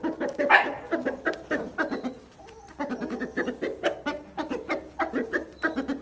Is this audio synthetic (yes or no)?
no